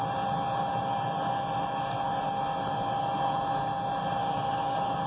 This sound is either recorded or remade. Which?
recorded